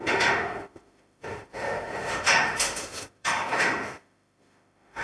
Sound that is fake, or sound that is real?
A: fake